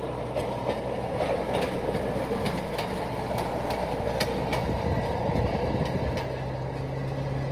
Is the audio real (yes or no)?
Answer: yes